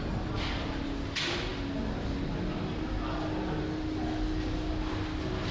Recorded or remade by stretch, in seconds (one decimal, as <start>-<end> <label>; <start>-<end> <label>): 0.0-5.5 recorded